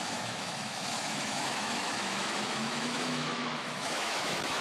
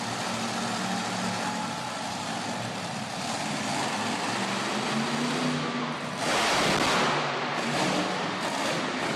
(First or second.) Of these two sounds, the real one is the second